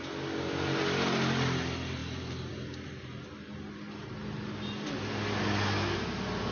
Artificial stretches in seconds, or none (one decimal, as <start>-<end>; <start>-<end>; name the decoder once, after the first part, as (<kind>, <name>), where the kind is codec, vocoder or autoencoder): none